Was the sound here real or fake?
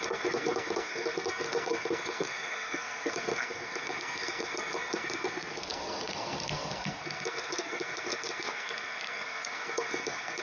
fake